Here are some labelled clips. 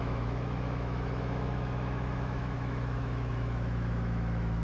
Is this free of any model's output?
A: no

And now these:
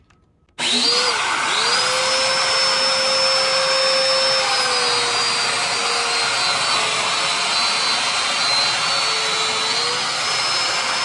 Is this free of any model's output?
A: yes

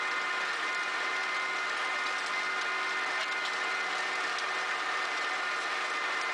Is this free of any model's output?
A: yes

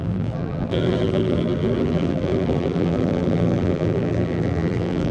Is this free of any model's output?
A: no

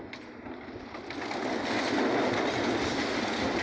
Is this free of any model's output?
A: yes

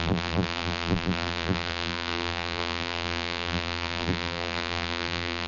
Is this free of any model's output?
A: no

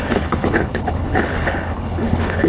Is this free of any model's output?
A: no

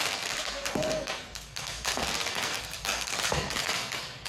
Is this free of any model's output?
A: no